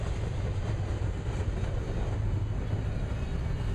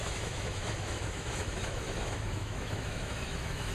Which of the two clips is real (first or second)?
first